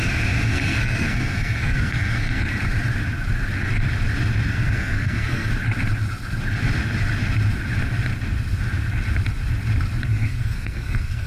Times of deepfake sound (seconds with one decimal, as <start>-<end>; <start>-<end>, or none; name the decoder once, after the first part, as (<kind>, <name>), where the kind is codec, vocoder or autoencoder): 0.5-2.5 (codec, SNAC); 4.5-5.5; 10.1-11.3